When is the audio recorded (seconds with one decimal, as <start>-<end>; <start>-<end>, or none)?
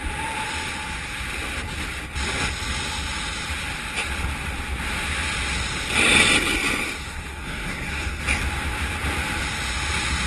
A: 0.0-7.0; 8.2-10.3